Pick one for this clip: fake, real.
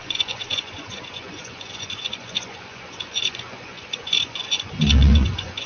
fake